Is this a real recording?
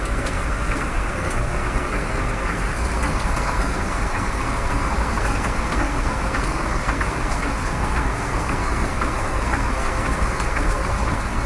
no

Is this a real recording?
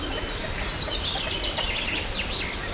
yes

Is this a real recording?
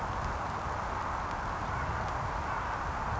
yes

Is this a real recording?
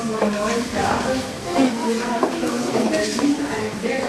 no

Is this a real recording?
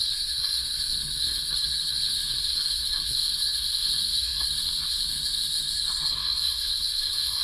no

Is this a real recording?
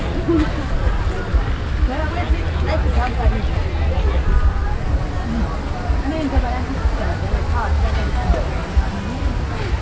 yes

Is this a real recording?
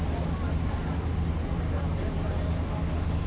yes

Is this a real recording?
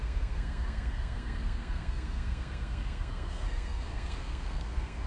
no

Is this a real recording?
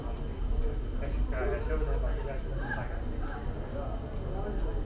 yes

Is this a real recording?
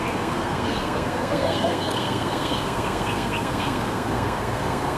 no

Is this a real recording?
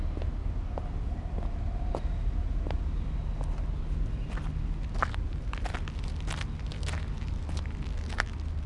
yes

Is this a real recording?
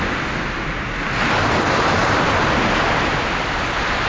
yes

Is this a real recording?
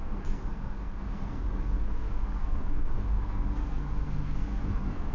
no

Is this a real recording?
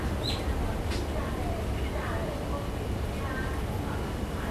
yes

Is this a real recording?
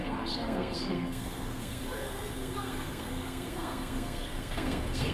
no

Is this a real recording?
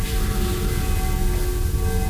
yes